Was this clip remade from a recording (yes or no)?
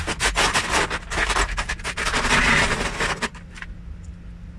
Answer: no